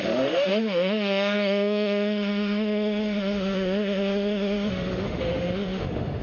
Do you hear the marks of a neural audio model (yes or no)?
yes